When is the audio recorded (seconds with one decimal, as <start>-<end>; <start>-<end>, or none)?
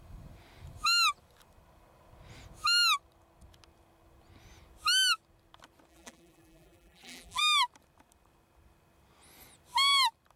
0.0-5.9; 7.4-10.4